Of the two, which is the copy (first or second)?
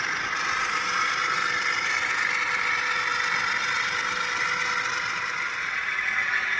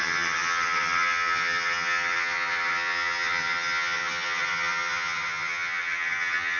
second